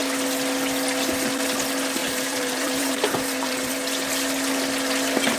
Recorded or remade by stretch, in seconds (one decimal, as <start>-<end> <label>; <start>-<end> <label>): 0.0-2.0 recorded; 2.0-3.7 remade; 3.7-5.4 recorded